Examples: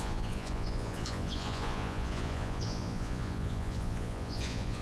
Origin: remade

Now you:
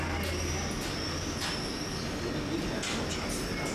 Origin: recorded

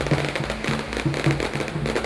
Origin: recorded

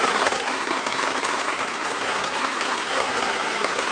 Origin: remade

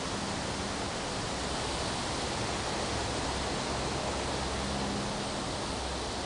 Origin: recorded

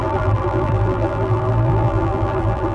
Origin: remade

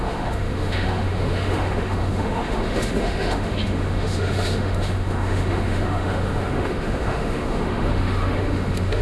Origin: remade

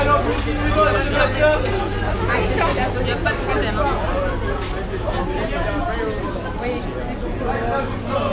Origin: recorded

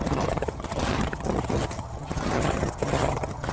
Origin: remade